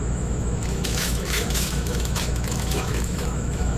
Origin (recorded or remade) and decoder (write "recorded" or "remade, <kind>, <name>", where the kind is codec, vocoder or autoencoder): remade, autoencoder, DAC-VAE